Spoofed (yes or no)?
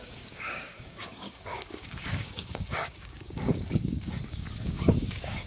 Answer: yes